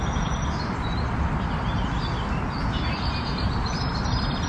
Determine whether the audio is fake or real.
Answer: real